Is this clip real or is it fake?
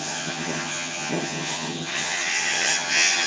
fake